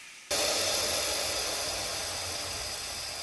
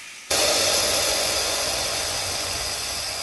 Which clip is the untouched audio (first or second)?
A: first